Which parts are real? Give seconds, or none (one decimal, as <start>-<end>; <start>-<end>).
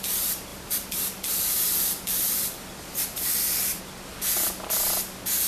0.0-0.5; 3.8-5.5